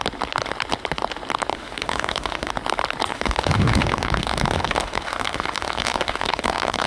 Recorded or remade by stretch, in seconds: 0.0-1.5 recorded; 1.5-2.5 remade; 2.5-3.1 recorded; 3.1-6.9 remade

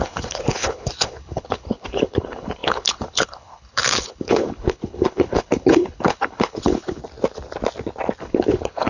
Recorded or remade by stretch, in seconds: 0.0-7.0 remade; 7.0-8.2 recorded; 8.2-8.9 remade

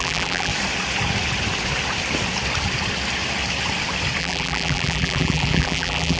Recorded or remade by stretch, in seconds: 0.0-0.5 remade; 0.5-4.2 recorded; 4.2-6.2 remade

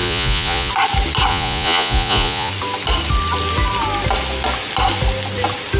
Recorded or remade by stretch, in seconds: 0.0-0.7 remade; 0.7-1.3 recorded; 1.3-2.5 remade; 2.5-5.8 recorded

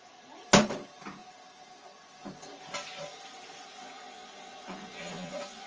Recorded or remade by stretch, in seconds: 0.0-3.8 recorded; 3.8-5.7 remade

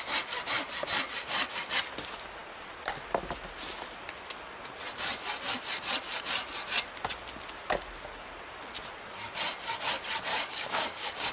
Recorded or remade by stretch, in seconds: 0.0-10.3 recorded; 10.3-11.3 remade